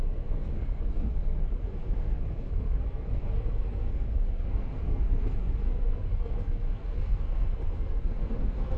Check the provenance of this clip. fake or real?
fake